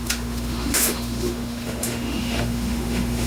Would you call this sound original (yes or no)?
no